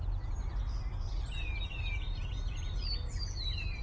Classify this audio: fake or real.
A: real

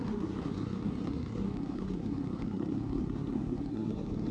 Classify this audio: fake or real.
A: fake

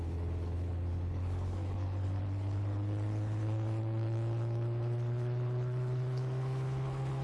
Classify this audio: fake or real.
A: fake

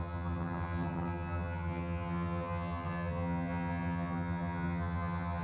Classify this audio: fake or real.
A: fake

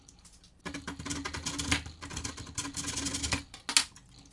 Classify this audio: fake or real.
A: real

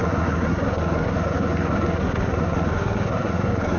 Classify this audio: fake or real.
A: fake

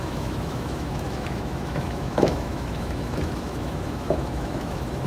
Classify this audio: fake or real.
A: fake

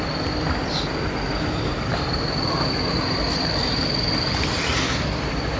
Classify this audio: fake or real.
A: real